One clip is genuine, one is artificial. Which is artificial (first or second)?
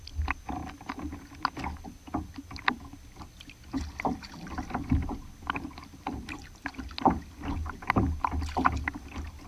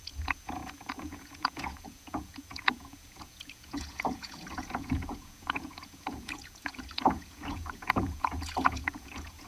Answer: second